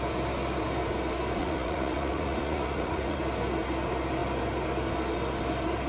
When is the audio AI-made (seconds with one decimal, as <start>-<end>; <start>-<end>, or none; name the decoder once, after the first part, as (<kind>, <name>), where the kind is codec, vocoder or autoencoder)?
1.4-3.2 (vocoder, Vocos)